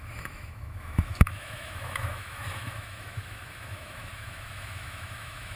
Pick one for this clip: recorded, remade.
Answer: remade